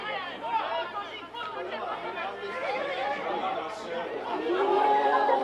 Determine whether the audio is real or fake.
fake